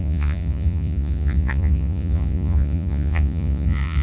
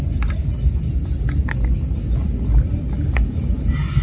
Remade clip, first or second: first